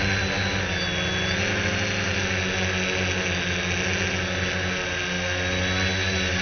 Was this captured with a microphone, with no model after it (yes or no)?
yes